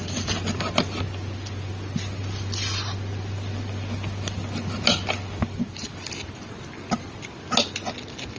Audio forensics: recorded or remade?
recorded